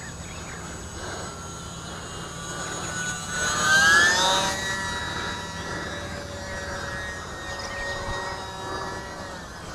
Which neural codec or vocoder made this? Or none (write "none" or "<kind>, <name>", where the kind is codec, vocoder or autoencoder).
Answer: none